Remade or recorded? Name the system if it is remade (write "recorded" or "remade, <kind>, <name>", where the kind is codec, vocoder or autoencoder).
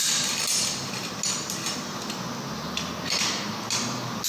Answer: recorded